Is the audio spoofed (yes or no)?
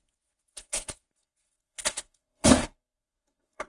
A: yes